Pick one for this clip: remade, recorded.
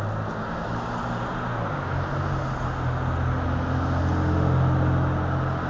recorded